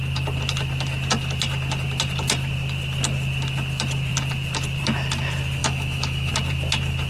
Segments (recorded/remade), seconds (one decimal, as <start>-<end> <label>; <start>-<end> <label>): 0.0-5.6 recorded; 5.6-6.3 remade; 6.3-7.1 recorded